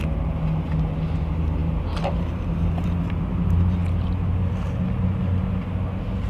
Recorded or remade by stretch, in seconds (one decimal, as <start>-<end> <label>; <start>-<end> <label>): 0.0-6.3 recorded